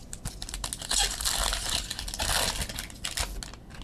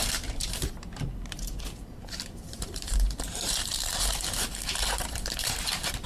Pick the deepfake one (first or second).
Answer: second